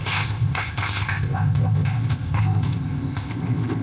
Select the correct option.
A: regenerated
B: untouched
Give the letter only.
A